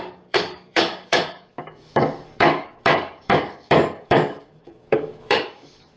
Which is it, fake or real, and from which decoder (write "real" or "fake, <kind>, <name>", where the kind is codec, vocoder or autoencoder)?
fake, codec, DAC